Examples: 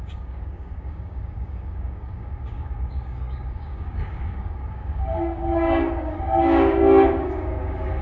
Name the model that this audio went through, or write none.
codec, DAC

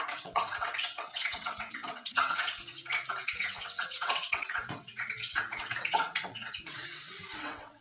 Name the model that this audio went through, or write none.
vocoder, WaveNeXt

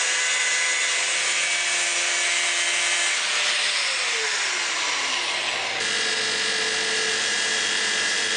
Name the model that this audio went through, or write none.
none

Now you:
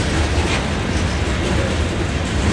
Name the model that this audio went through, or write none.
none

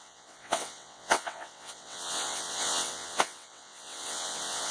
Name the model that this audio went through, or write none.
vocoder, WaveNeXt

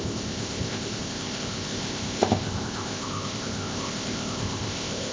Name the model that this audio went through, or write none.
codec, ZipCodec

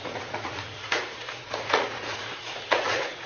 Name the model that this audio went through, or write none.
vocoder, Vocos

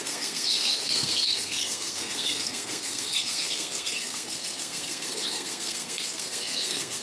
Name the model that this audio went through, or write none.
codec, SNAC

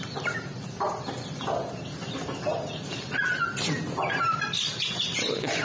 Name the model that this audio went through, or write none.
none